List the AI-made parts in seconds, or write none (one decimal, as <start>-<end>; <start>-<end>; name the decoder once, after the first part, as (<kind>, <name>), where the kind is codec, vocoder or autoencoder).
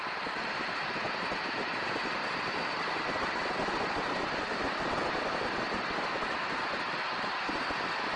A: none